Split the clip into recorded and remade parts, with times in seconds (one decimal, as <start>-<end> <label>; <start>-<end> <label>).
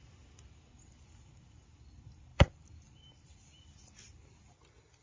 0.0-5.0 recorded